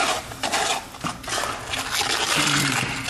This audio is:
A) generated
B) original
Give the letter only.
B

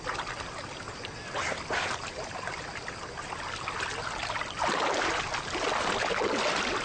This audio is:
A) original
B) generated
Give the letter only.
A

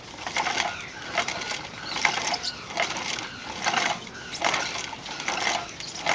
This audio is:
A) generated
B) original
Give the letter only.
B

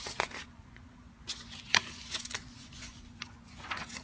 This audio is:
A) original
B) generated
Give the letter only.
B